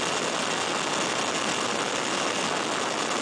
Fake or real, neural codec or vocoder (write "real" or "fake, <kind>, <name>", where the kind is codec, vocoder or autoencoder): real